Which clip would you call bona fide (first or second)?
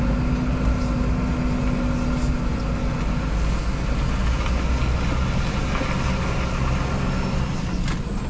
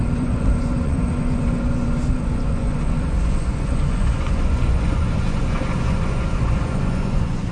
first